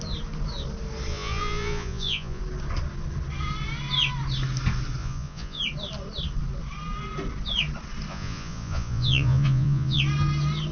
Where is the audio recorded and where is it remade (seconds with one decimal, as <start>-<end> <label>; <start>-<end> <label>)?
0.0-1.1 recorded; 1.1-2.4 remade; 2.4-5.0 recorded; 5.0-5.6 remade; 5.6-8.1 recorded; 8.1-10.0 remade; 10.0-10.7 recorded